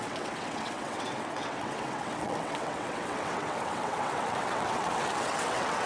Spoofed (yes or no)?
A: yes